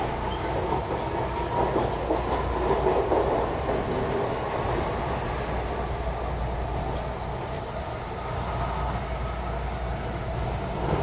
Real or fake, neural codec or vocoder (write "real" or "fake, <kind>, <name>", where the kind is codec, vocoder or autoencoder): real